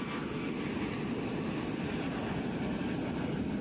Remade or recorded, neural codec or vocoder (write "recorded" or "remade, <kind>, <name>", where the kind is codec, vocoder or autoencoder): recorded